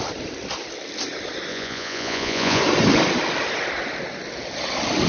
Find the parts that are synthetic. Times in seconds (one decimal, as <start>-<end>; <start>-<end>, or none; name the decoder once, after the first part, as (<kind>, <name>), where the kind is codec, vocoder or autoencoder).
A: 1.5-2.6 (vocoder, Vocos)